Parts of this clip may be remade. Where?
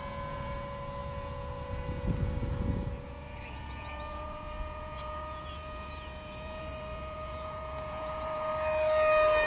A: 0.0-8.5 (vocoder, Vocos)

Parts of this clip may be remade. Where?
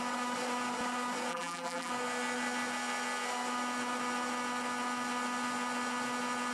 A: 1.3-1.9 (vocoder, BigVGAN v2)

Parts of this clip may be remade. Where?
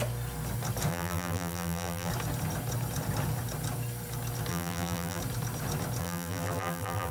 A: 0.9-2.1 (vocoder, BigVGAN v2); 4.5-5.2; 6.0-7.1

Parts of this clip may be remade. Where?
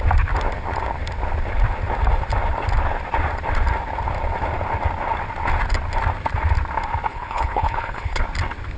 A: 7.1-8.2 (codec, HILCodec)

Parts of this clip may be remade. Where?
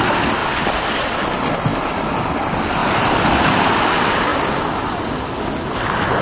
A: 0.4-1.2 (vocoder, BigVGAN v2); 2.8-3.6